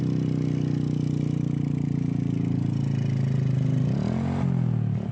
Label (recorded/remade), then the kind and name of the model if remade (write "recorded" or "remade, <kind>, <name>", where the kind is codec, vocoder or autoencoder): recorded